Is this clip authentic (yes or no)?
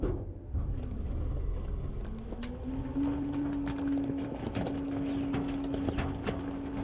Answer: yes